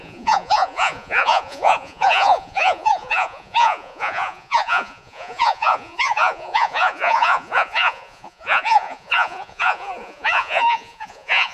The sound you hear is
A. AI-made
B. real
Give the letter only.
A